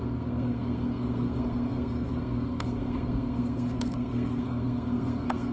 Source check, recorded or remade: remade